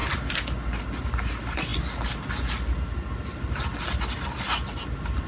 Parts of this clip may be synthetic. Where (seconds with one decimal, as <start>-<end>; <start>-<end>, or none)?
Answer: none